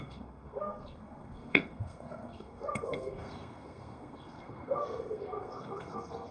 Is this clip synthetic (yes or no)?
yes